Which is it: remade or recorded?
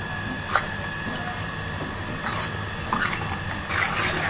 recorded